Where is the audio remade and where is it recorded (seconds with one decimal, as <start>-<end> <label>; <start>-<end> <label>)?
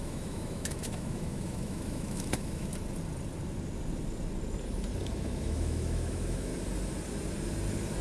0.0-2.7 remade; 2.7-5.1 recorded; 5.1-6.5 remade; 6.5-8.0 recorded